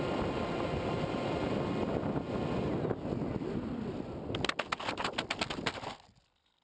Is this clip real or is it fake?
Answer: real